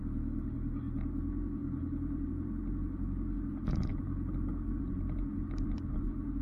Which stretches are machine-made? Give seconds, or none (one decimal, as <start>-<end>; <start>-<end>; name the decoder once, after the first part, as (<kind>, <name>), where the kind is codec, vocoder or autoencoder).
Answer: 1.6-2.3 (vocoder, BigVGAN v2)